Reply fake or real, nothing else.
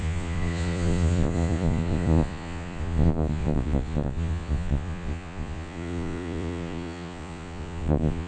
fake